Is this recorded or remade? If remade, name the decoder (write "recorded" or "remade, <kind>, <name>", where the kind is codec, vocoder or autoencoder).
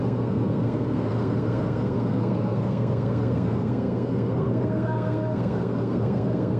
remade, codec, SNAC